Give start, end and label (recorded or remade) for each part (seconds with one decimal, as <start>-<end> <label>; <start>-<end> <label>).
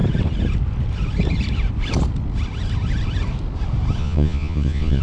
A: 0.0-4.0 recorded; 4.0-5.0 remade